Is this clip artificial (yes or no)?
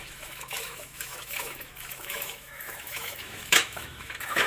yes